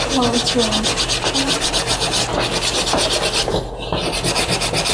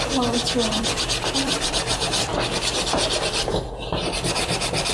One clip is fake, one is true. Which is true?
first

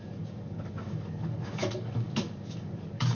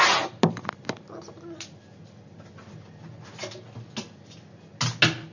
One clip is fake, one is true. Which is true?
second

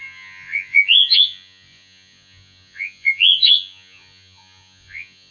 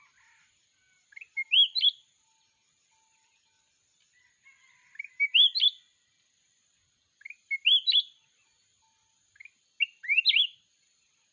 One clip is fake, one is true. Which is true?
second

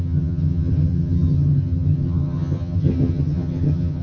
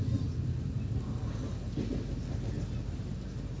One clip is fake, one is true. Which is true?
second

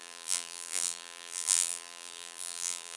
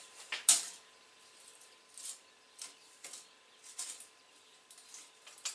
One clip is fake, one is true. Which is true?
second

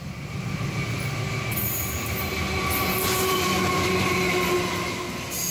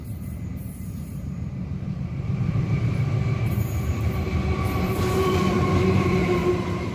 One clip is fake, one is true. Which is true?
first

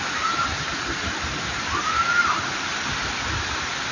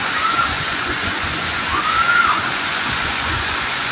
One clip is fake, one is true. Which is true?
first